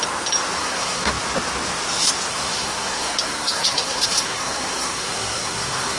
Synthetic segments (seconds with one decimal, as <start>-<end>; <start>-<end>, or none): 0.6-1.1; 2.3-6.0